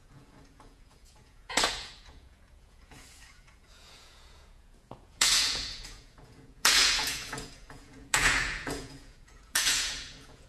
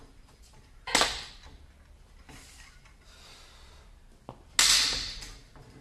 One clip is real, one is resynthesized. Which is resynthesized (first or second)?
first